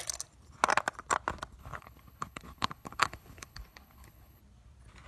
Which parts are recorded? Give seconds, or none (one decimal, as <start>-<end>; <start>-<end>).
0.0-1.6; 4.4-5.1